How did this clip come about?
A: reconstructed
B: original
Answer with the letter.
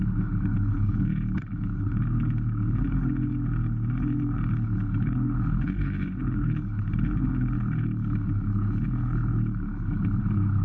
A